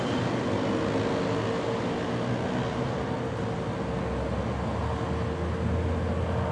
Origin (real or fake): real